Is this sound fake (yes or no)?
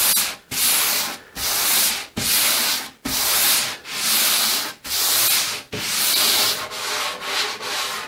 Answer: no